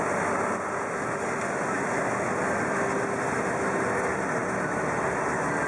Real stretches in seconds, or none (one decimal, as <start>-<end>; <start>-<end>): 0.0-5.7